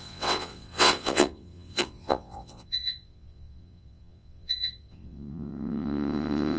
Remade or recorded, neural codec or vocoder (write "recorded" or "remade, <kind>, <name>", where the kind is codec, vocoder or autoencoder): remade, vocoder, WaveNeXt